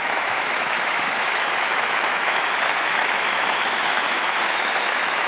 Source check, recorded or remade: remade